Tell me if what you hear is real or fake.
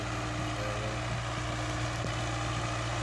real